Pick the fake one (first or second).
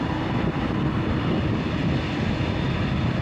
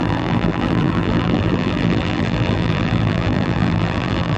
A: second